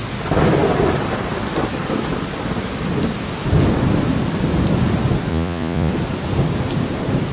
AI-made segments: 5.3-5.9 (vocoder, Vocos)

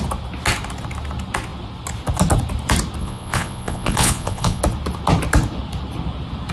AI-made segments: 3.0-4.6 (vocoder, Vocos)

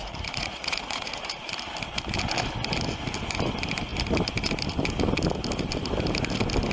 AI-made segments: 0.0-1.5 (vocoder, Vocos)

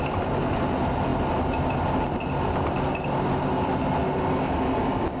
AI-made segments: none

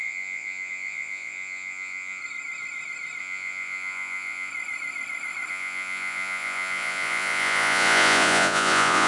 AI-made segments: 0.0-2.2 (vocoder, Vocos); 3.2-4.5; 5.5-9.1

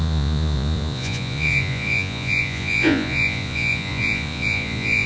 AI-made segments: 0.0-5.1 (vocoder, Vocos)

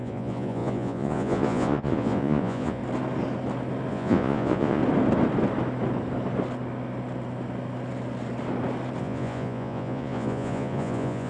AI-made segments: 0.0-2.8 (vocoder, Vocos); 3.9-4.8; 9.0-11.3